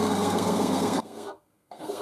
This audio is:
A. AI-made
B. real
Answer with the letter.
A